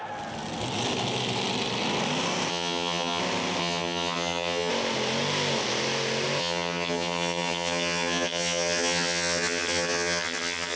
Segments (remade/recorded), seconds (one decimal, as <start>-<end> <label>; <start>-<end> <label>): 0.0-2.5 recorded; 2.5-3.2 remade; 3.2-3.6 recorded; 3.6-4.7 remade; 4.7-6.4 recorded; 6.4-10.8 remade